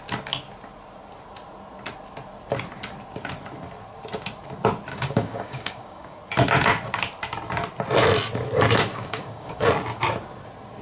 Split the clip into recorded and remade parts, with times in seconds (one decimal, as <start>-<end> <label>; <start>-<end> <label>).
0.0-4.9 recorded; 4.9-6.2 remade; 6.2-8.9 recorded; 8.9-9.7 remade; 9.7-10.8 recorded